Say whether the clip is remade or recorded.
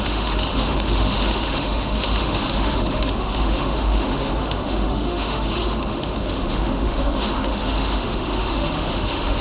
remade